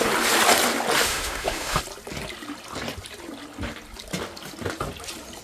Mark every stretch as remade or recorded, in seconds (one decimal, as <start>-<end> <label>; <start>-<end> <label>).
0.0-1.1 recorded; 1.1-1.8 remade; 1.8-5.4 recorded